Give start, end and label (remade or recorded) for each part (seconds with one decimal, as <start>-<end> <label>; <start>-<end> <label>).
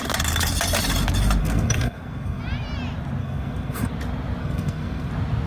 0.0-1.4 recorded; 1.4-2.4 remade; 2.4-3.2 recorded; 3.2-3.9 remade; 3.9-4.4 recorded; 4.4-5.1 remade; 5.1-5.5 recorded